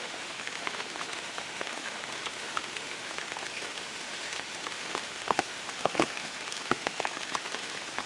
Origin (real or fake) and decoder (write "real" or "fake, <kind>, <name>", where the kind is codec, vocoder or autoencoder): fake, autoencoder, DAC-VAE